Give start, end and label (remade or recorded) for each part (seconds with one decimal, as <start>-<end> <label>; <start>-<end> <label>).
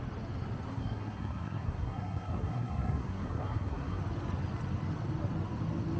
0.0-0.7 recorded; 0.7-4.0 remade; 4.0-6.0 recorded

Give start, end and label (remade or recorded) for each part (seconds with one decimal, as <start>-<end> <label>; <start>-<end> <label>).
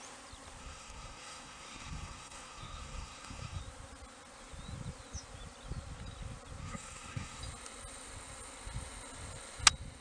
0.0-0.6 recorded; 0.6-3.6 remade; 3.6-6.6 recorded; 6.6-7.4 remade; 7.4-10.0 recorded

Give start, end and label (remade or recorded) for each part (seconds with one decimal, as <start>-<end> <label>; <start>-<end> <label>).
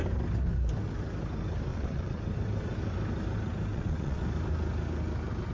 0.0-1.7 recorded; 1.7-2.2 remade; 2.2-3.7 recorded; 3.7-4.2 remade; 4.2-5.5 recorded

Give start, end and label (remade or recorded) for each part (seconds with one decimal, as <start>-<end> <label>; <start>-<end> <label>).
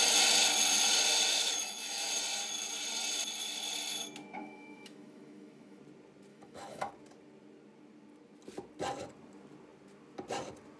0.0-1.3 recorded; 1.3-2.1 remade; 2.1-4.4 recorded; 4.4-5.8 remade; 5.8-6.3 recorded; 6.3-6.9 remade; 6.9-10.8 recorded